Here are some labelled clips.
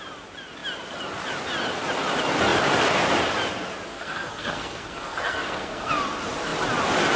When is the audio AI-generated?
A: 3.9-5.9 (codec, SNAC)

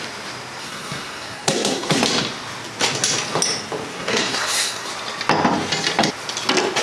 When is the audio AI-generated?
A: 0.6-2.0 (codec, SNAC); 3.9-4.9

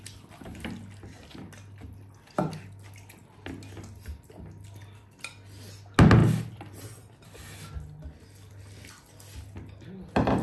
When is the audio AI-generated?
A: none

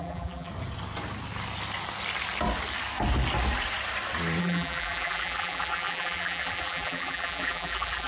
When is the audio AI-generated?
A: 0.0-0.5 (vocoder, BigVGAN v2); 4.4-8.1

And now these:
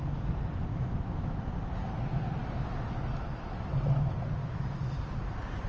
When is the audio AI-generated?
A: 0.7-1.4 (autoencoder, DAC-VAE); 4.4-4.9

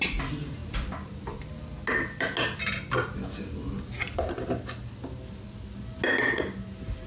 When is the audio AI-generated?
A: none